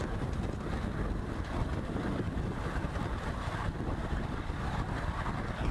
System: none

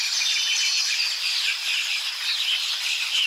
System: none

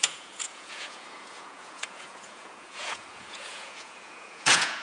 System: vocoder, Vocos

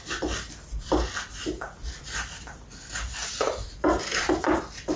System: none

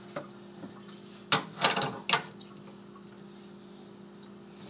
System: none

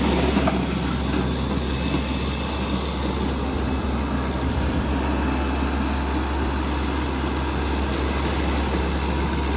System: none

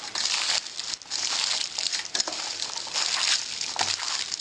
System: none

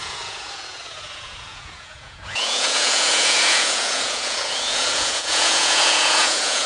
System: vocoder, Vocos